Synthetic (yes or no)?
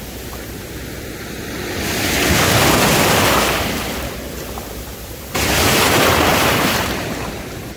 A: yes